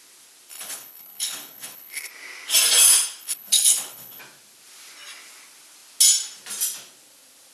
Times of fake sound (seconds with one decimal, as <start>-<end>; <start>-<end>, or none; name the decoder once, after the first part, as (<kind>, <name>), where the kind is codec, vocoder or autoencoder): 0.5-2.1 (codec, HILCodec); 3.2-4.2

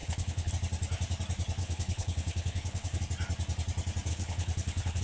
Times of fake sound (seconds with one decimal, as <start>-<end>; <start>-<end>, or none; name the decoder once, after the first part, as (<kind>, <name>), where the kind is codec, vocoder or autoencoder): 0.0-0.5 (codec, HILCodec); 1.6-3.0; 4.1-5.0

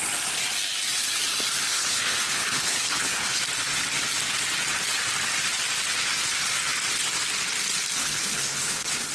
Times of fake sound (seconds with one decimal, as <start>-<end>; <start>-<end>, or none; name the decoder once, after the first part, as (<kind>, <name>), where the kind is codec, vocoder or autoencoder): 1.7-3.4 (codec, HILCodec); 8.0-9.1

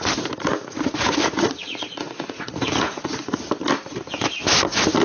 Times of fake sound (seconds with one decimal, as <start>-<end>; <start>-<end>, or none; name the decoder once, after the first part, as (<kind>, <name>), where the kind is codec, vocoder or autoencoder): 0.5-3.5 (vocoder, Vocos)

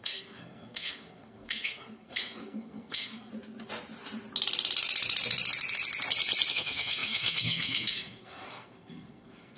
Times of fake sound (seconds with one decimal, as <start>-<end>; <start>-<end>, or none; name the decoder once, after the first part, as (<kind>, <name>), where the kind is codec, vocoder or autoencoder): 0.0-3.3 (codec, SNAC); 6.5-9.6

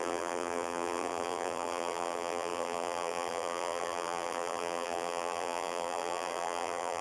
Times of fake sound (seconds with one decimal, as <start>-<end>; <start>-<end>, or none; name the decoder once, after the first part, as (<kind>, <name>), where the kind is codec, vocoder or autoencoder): 0.0-7.0 (vocoder, BigVGAN v2)

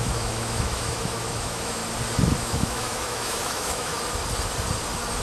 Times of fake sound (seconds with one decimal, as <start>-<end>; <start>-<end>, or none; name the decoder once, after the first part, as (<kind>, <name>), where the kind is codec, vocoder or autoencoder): 0.0-1.8 (autoencoder, DAC-VAE); 2.4-3.9

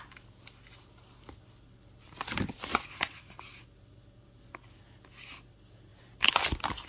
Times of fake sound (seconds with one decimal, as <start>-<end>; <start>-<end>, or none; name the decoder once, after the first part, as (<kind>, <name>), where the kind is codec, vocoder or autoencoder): 2.7-3.4 (vocoder, Vocos)